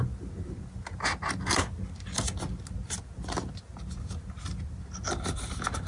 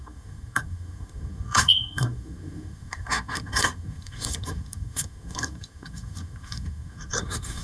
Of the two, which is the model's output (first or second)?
second